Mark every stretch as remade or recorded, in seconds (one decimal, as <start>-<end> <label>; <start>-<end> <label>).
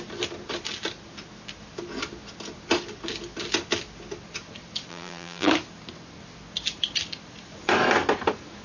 0.0-4.9 recorded; 4.9-5.5 remade; 5.5-8.6 recorded